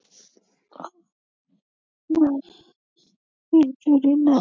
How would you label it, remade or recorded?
recorded